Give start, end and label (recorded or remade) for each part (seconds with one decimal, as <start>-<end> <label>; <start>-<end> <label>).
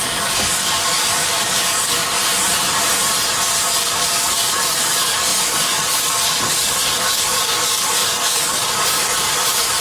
0.0-2.2 remade; 2.2-3.8 recorded; 3.8-9.8 remade